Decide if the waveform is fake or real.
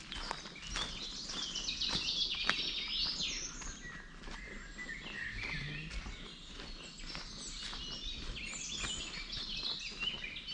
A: real